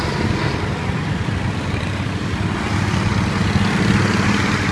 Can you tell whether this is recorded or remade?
recorded